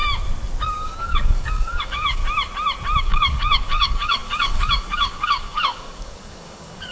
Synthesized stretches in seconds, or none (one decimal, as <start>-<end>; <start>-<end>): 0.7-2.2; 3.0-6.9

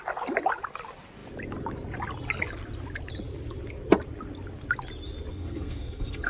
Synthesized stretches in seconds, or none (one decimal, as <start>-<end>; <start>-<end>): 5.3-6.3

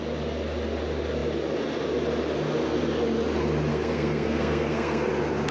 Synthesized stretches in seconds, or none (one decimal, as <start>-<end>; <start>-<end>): 3.7-5.1

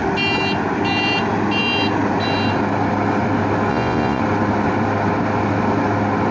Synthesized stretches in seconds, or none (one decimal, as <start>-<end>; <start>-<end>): 3.7-4.2

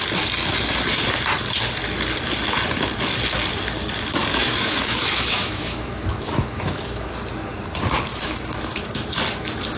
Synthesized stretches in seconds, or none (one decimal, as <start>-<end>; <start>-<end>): 4.3-7.1; 8.1-9.1

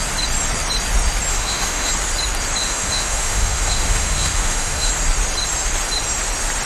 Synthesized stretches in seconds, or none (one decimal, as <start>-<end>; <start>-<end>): 1.3-1.9; 2.6-4.9